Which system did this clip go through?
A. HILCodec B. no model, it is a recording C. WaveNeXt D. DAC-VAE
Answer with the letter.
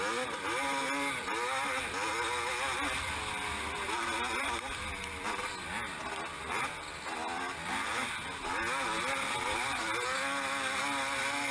B